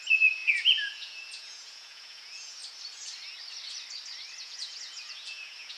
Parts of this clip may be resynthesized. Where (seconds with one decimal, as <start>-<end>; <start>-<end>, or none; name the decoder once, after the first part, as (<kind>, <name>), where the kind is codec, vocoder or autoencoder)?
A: 0.0-2.6 (vocoder, Vocos); 4.4-5.8

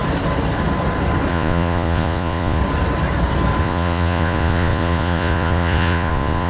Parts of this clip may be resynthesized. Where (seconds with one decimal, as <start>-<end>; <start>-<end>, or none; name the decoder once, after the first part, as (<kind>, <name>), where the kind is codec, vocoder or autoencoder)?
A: 1.3-2.6 (vocoder, Vocos); 3.6-6.5

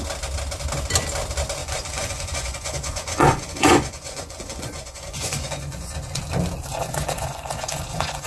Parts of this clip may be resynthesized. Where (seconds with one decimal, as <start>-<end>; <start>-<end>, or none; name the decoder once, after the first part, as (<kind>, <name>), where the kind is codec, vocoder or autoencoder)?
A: 1.6-6.2 (vocoder, Vocos); 6.7-8.3

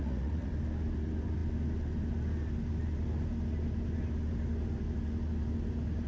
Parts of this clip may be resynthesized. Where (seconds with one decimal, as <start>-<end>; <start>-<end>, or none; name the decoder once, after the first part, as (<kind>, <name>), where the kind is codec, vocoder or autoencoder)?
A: 0.0-0.5 (vocoder, Vocos)